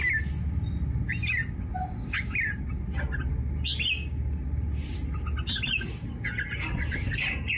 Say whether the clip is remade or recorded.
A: recorded